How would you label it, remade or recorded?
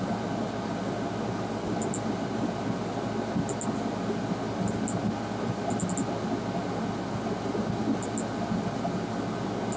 recorded